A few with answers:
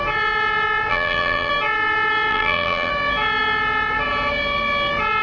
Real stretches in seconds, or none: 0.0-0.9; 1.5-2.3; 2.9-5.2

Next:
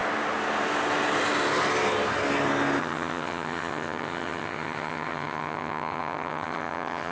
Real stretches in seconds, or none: 0.0-2.8

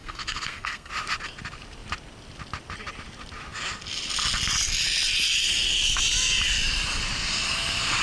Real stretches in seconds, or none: 0.9-8.0

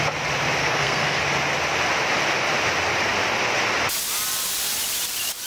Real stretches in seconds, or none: 0.0-0.6; 1.2-5.5